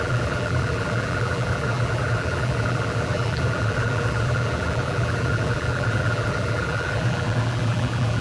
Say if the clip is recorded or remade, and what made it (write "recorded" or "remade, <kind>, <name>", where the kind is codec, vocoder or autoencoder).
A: remade, vocoder, BigVGAN v2